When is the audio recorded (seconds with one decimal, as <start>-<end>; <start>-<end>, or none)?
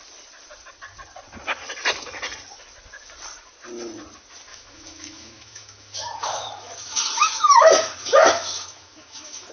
0.0-4.5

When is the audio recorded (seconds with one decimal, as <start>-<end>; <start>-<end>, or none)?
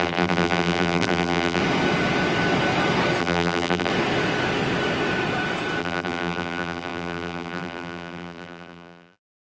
1.6-3.2; 3.9-5.8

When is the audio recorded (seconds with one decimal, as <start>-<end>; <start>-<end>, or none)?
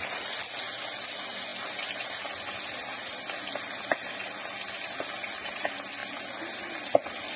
0.0-7.4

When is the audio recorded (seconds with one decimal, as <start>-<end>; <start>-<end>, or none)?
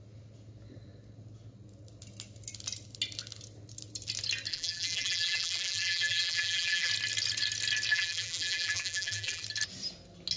0.0-4.5; 6.9-7.9; 9.4-10.4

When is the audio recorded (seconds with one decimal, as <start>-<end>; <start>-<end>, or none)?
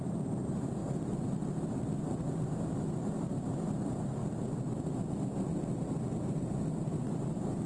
0.8-3.0; 4.2-5.1; 5.5-6.3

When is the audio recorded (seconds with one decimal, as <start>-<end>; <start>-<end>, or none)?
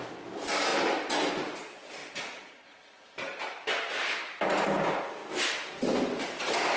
0.0-2.0; 3.4-6.8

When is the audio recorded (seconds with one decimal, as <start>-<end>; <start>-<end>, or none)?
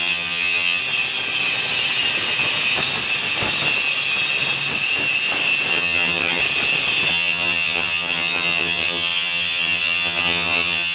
0.8-5.7; 6.4-7.1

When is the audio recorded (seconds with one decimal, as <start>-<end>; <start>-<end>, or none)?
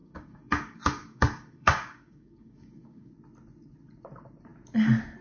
3.1-5.2